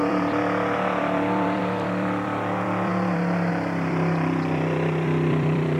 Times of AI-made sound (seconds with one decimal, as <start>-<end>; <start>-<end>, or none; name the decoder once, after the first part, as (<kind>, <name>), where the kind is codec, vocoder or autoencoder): 0.0-5.8 (vocoder, BigVGAN v2)